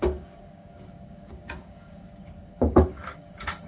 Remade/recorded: remade